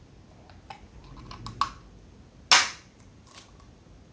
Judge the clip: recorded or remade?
recorded